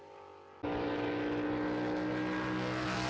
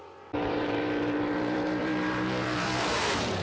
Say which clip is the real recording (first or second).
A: first